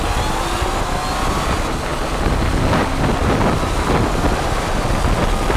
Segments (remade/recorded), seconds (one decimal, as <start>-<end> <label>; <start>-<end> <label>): 0.0-5.6 recorded